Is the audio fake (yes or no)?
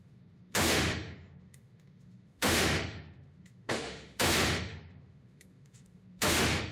yes